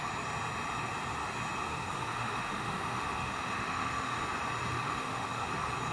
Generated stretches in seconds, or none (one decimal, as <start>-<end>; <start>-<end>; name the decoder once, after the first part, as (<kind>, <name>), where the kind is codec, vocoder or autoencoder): 1.7-4.2 (autoencoder, DAC-VAE); 4.7-5.5